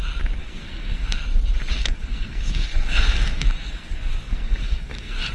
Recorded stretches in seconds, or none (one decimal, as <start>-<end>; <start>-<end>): 0.0-0.4; 1.2-1.7